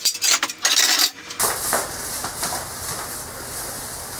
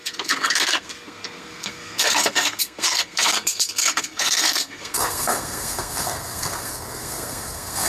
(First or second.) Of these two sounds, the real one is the first